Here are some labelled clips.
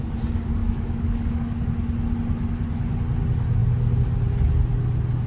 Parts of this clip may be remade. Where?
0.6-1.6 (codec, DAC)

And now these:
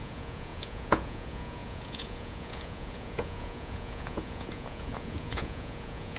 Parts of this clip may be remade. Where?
0.0-6.2 (vocoder, Vocos)

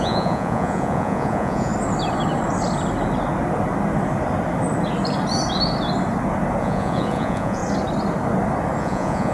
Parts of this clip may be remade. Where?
0.0-1.7 (vocoder, Vocos); 6.6-7.6; 8.8-9.3

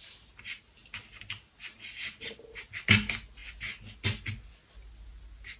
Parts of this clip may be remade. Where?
none

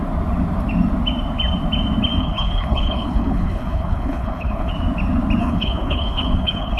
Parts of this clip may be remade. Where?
2.2-4.7 (codec, HILCodec); 5.4-6.8